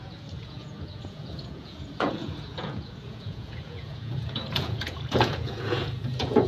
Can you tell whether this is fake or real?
fake